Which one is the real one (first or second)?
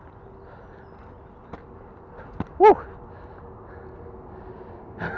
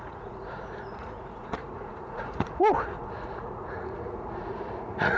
first